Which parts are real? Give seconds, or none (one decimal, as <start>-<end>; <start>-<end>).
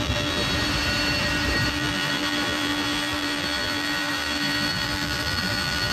0.4-1.7